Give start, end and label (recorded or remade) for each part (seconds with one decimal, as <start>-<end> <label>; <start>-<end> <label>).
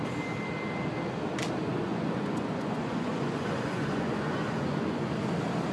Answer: 0.0-1.7 recorded; 1.7-5.1 remade; 5.1-5.7 recorded